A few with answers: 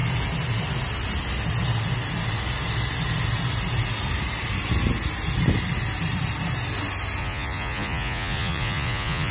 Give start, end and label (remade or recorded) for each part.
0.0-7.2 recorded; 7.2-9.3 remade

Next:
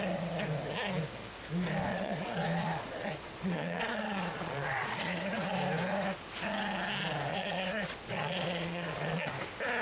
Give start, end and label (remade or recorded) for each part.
0.0-1.9 recorded; 1.9-5.5 remade; 5.5-7.3 recorded; 7.3-9.3 remade; 9.3-9.8 recorded

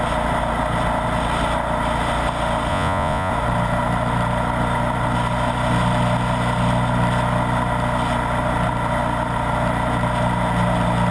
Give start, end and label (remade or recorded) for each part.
0.0-2.7 recorded; 2.7-3.3 remade; 3.3-11.1 recorded